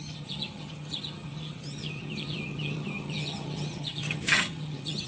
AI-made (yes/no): yes